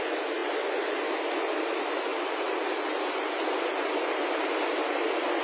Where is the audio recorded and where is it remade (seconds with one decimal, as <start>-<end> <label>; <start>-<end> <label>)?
0.0-5.4 recorded